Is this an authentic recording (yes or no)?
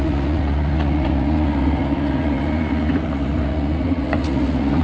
no